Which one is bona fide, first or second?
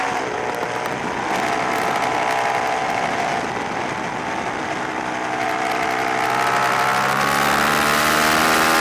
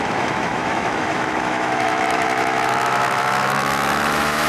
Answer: first